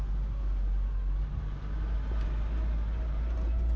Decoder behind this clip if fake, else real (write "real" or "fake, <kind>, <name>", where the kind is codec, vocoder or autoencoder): real